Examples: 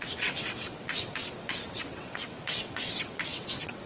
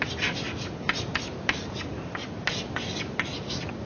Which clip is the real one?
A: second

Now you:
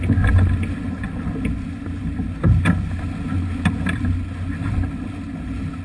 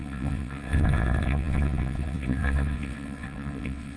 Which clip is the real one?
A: first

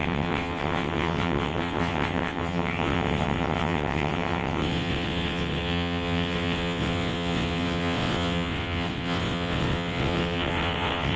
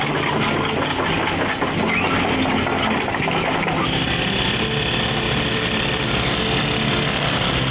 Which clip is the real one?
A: second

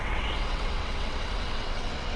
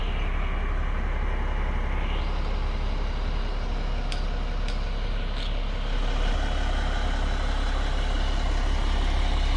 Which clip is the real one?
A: second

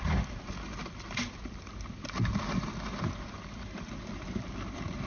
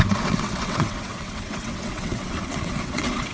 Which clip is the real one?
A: first